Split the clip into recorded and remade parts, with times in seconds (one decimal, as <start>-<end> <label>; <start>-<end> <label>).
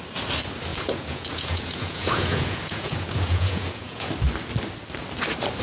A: 0.0-0.7 recorded; 0.7-4.1 remade; 4.1-5.6 recorded